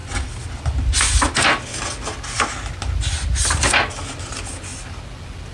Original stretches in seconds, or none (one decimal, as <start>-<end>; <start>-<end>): 0.0-5.5